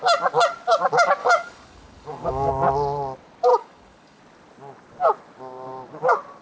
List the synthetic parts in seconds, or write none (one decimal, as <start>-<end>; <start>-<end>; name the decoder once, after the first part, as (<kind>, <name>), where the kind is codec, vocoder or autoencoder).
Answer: 1.2-2.5 (codec, DAC); 3.5-4.2